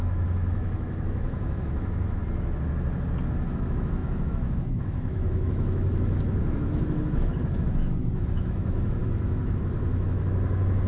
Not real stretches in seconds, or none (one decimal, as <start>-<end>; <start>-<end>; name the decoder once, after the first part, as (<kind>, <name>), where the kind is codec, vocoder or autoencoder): 0.0-2.2 (autoencoder, DAC-VAE); 3.3-10.9